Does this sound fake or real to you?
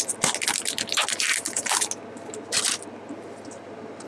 real